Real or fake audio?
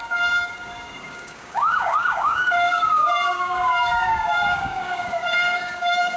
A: fake